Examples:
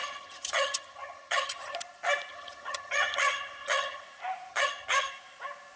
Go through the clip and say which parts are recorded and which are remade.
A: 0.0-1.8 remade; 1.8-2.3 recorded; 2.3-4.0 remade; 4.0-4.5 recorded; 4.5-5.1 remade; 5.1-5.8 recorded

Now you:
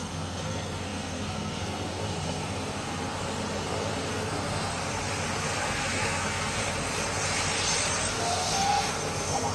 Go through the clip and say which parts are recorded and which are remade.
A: 0.0-3.1 remade; 3.1-4.1 recorded; 4.1-4.7 remade; 4.7-5.4 recorded; 5.4-6.6 remade; 6.6-8.1 recorded; 8.1-9.5 remade

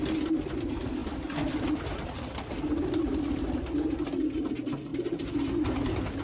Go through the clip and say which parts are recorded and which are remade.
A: 0.0-6.2 recorded

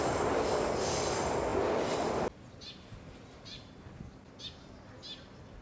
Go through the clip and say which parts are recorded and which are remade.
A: 0.0-5.6 recorded